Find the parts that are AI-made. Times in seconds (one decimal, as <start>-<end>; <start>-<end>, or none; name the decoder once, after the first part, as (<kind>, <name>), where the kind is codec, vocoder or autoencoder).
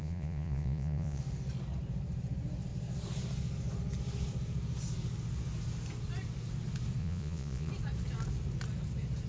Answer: 0.0-1.2 (vocoder, Vocos); 7.0-7.7